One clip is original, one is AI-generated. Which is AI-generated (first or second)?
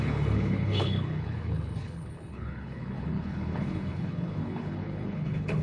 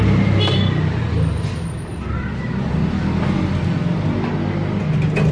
first